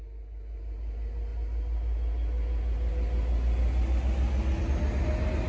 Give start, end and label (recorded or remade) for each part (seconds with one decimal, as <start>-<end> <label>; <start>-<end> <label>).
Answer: 0.0-5.5 recorded